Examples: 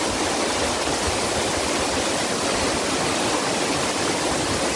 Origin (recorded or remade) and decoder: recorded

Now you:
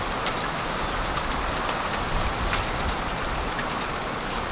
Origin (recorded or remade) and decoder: recorded